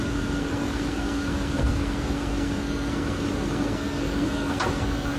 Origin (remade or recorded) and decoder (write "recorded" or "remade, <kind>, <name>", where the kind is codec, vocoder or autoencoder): remade, codec, SNAC